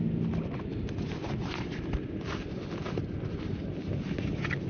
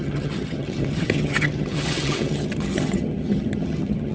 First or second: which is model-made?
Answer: second